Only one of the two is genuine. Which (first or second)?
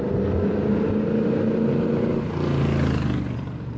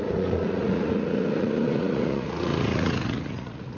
first